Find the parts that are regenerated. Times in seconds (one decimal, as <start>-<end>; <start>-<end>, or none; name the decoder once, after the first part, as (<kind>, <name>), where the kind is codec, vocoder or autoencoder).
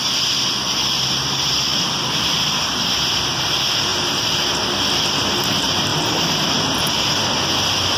3.9-4.4 (vocoder, BigVGAN v2); 5.9-6.8